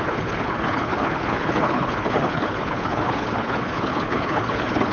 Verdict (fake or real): fake